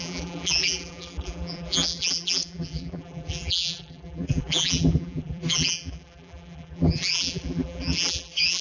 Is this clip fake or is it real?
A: fake